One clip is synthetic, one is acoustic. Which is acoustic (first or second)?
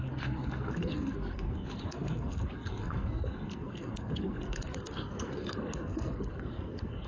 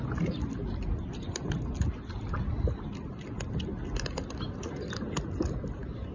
second